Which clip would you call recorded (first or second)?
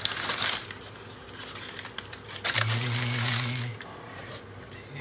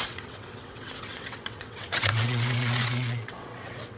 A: first